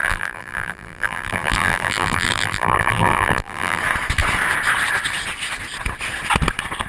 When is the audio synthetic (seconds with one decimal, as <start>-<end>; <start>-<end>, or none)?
0.0-3.8